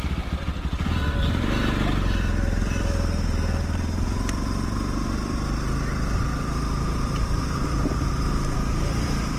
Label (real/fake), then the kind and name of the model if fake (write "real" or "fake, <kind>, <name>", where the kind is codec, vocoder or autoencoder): fake, vocoder, BigVGAN v2